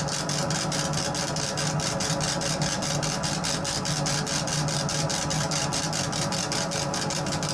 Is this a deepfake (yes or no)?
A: no